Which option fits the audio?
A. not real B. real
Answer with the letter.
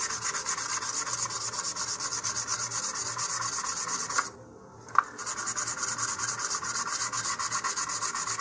B